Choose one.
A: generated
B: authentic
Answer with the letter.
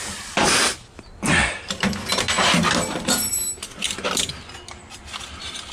B